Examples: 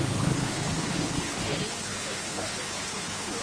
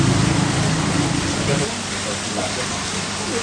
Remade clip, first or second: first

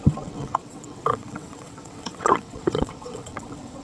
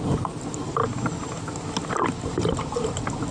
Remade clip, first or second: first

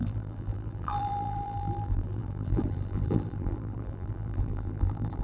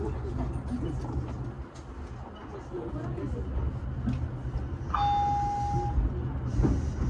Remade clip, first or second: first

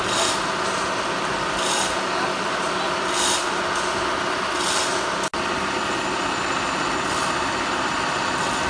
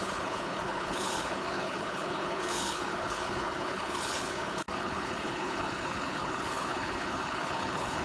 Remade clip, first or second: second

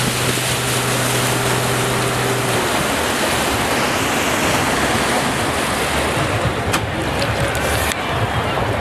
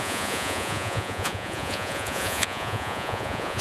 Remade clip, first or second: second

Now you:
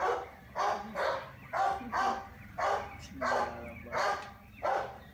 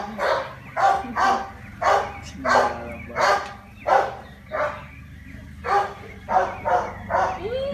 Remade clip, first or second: first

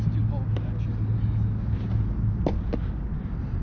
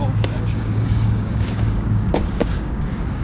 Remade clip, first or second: second